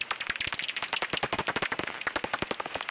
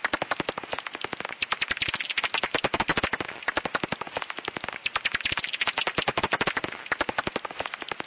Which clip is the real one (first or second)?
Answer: second